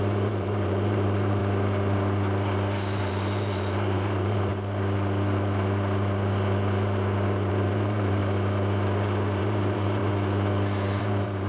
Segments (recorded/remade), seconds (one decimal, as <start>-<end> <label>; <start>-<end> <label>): 0.0-1.4 remade; 1.4-3.0 recorded; 3.0-4.5 remade; 4.5-7.5 recorded; 7.5-8.2 remade; 8.2-9.4 recorded; 9.4-10.0 remade; 10.0-11.0 recorded; 11.0-11.5 remade